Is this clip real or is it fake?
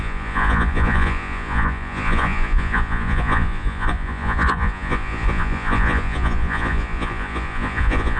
fake